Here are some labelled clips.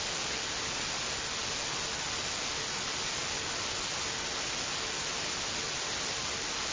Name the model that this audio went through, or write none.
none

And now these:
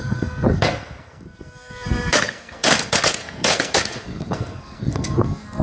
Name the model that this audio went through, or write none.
codec, SNAC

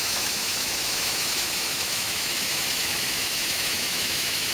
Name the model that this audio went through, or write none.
autoencoder, DAC-VAE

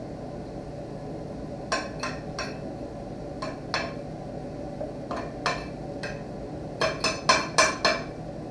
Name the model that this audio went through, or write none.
none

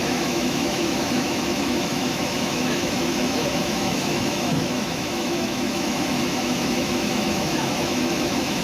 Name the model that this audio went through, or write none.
autoencoder, DAC-VAE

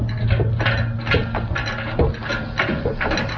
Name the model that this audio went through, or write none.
none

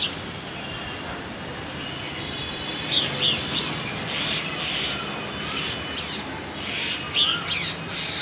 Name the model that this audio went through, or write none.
none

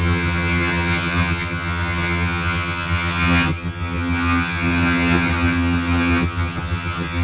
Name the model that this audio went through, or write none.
vocoder, HiFi-GAN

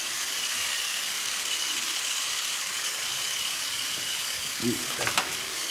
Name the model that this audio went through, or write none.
codec, DAC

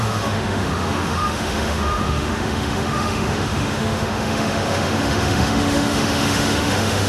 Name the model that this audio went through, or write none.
autoencoder, DAC-VAE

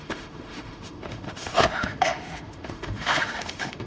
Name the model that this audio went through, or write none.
autoencoder, DAC-VAE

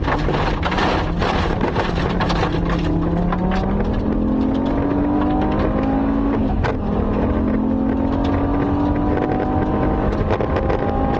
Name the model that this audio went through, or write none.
none